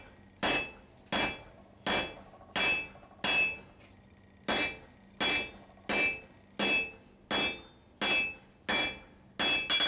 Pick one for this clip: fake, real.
real